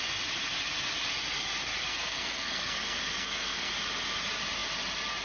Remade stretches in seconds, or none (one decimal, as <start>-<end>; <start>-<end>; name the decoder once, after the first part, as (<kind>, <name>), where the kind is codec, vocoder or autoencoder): 1.9-3.7 (codec, SNAC)